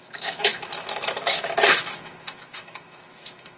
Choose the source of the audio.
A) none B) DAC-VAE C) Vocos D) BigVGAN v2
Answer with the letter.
B